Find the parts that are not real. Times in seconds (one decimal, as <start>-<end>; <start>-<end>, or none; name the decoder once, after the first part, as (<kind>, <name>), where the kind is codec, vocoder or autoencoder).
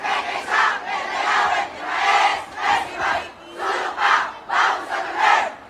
none